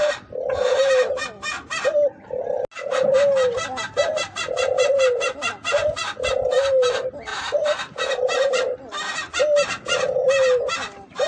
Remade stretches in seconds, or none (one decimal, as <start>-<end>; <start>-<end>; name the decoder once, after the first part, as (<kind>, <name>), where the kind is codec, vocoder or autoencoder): 7.3-8.5 (vocoder, BigVGAN v2)